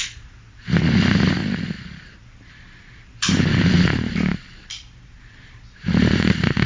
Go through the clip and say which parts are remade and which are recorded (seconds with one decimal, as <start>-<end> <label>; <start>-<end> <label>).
0.0-6.7 remade